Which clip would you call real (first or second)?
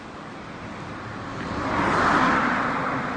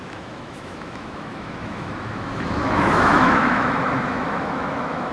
first